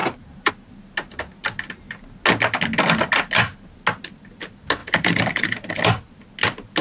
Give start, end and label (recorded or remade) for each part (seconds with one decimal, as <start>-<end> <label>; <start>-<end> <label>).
0.0-0.5 remade; 0.5-4.8 recorded; 4.8-5.8 remade; 5.8-6.8 recorded